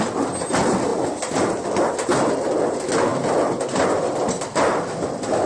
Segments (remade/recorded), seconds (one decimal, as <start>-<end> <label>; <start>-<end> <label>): 0.0-5.5 recorded